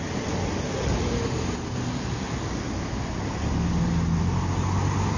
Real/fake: real